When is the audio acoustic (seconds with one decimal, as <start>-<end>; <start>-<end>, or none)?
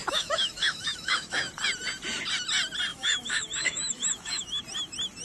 1.5-2.9; 4.6-5.2